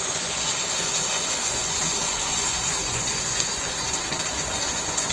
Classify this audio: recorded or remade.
remade